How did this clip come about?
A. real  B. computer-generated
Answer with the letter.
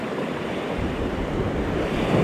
B